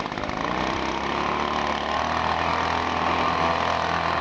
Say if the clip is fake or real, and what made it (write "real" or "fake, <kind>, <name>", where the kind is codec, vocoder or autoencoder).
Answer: real